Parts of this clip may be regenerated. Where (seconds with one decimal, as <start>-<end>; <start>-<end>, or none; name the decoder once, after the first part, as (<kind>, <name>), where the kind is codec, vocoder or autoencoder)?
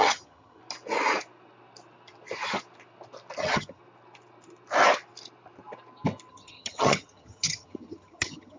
0.0-0.6 (vocoder, HiFi-GAN); 3.4-3.8; 6.3-8.6